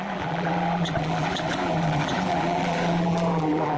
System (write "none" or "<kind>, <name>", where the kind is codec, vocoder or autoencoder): vocoder, BigVGAN v2